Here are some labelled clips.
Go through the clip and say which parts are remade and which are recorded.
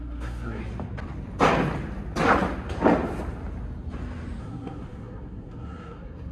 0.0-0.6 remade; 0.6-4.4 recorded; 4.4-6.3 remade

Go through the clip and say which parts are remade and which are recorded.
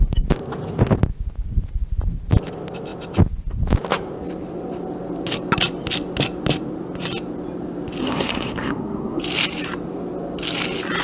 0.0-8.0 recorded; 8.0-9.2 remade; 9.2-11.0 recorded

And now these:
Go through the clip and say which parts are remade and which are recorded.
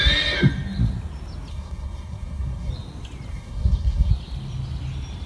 0.0-1.5 recorded; 1.5-2.7 remade; 2.7-3.3 recorded; 3.3-4.1 remade; 4.1-5.3 recorded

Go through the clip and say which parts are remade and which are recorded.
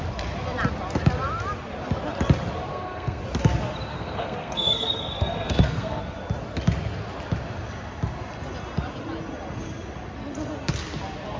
0.0-2.7 recorded; 2.7-3.2 remade; 3.2-3.9 recorded; 3.9-6.0 remade; 6.0-11.4 recorded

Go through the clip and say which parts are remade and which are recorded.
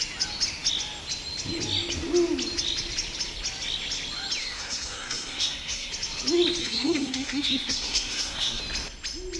0.0-4.4 recorded; 4.4-5.9 remade; 5.9-6.6 recorded; 6.6-8.6 remade; 8.6-9.4 recorded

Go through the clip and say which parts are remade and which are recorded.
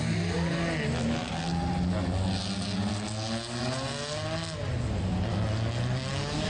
0.0-6.5 recorded